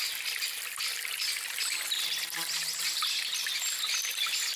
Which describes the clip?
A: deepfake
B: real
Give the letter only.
B